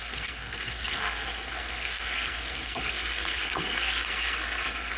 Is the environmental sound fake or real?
fake